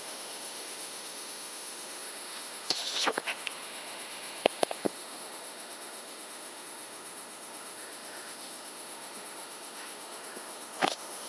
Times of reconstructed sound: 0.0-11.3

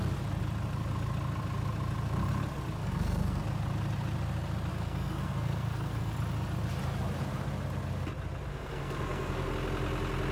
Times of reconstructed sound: 2.8-3.4; 4.7-6.1; 8.5-9.5

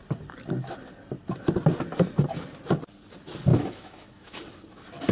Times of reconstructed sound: 3.5-4.4

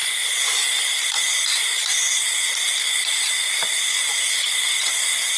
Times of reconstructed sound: 0.8-5.4

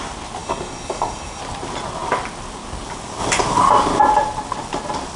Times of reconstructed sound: 0.4-1.4

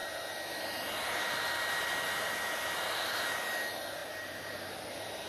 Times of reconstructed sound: 4.0-5.3

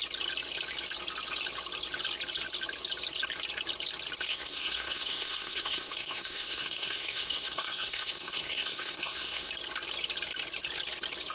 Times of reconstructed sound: 4.3-9.5

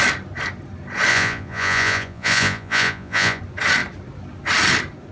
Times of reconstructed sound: 1.1-3.4